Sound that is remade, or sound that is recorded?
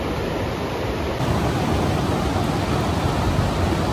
recorded